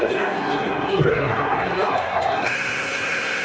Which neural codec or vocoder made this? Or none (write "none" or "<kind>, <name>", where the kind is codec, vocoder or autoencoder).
codec, SNAC